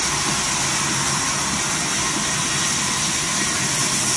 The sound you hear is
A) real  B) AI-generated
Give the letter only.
A